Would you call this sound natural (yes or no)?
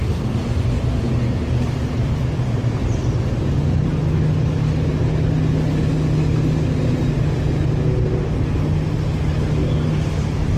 yes